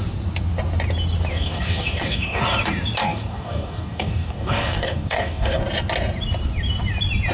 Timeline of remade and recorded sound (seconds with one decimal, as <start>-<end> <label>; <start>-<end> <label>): 0.0-1.3 recorded; 1.3-2.4 remade; 2.4-3.0 recorded; 3.0-5.6 remade; 5.6-7.3 recorded